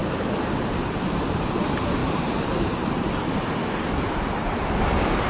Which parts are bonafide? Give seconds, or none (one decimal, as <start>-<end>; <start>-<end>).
none